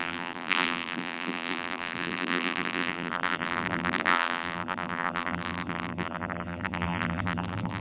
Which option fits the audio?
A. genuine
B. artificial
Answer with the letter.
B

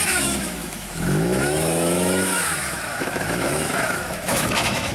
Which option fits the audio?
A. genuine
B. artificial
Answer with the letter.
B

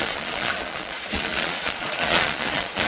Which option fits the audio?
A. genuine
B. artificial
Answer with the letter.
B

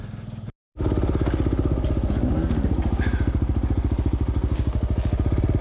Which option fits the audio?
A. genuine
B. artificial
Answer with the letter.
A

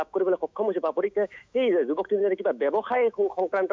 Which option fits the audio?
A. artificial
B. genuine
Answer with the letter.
A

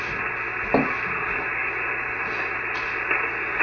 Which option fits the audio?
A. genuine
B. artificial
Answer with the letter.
A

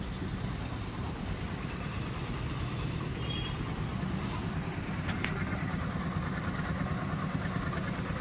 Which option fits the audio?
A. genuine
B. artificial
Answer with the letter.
B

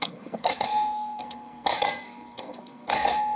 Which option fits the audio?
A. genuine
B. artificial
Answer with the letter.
B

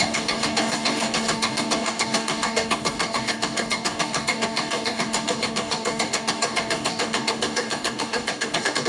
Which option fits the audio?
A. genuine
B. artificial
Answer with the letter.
B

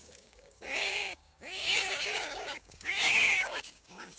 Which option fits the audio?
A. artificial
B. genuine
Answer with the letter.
A